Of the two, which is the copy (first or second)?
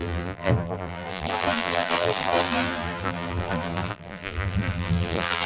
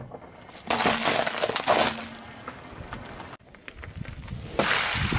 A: first